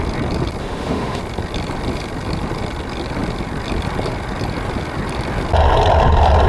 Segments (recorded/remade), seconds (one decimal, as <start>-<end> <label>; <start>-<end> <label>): 0.0-0.6 recorded; 0.6-1.2 remade; 1.2-6.5 recorded